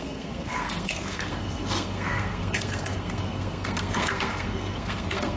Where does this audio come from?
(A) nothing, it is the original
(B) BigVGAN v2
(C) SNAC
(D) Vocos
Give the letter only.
C